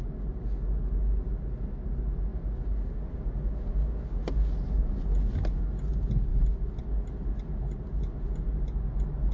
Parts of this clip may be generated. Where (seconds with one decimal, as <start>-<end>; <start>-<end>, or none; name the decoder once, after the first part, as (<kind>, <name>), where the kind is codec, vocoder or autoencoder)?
none